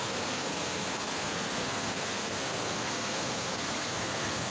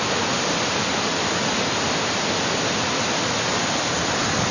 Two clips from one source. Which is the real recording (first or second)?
second